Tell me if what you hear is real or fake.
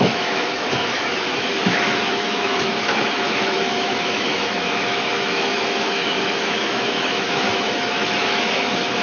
fake